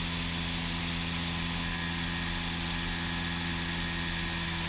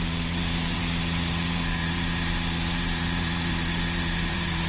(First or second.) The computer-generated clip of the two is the second